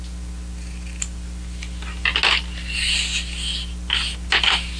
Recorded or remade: recorded